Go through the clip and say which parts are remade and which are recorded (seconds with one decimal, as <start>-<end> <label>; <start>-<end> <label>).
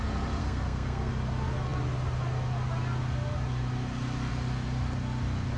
0.0-0.4 recorded; 0.4-1.1 remade; 1.1-5.6 recorded